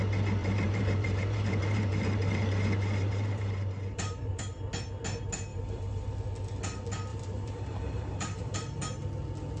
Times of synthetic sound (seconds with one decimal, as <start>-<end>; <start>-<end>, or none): 0.4-4.4; 5.5-6.1; 7.1-8.8